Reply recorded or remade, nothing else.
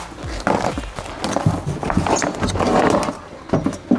recorded